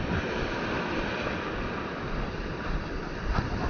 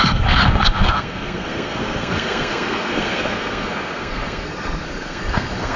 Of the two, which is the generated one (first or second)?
second